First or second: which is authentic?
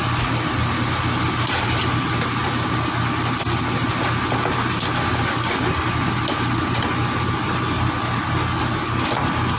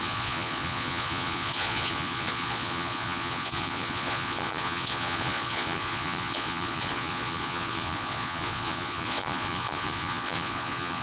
first